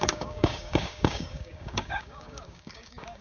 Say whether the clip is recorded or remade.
remade